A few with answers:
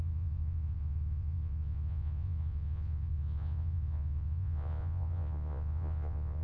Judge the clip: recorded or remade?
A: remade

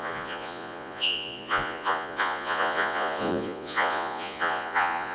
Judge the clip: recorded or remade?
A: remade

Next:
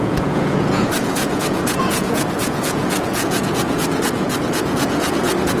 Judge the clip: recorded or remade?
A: remade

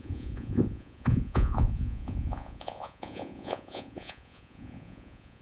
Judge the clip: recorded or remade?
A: remade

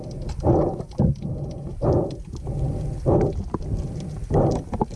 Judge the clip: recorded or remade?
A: recorded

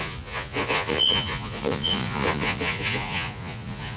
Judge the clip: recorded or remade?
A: remade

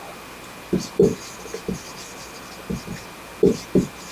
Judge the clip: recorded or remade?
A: recorded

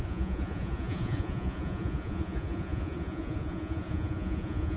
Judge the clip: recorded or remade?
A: remade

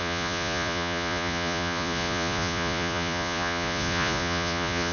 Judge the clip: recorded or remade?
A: remade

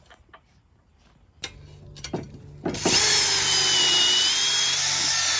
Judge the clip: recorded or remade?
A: recorded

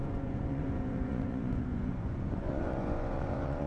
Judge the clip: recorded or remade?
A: remade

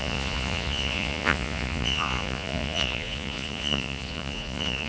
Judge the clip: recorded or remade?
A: remade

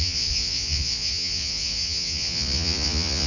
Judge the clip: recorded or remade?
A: remade